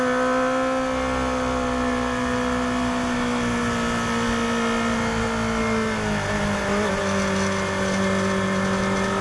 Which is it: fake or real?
real